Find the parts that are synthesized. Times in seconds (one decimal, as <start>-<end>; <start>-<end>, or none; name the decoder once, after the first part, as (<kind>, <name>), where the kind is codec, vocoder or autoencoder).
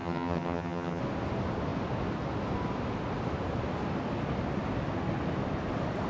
0.0-1.0 (vocoder, HiFi-GAN)